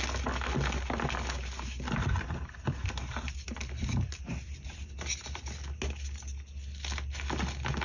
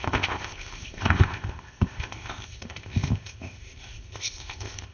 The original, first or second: first